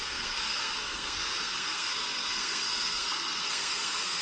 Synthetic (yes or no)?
yes